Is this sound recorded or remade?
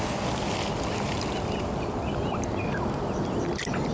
recorded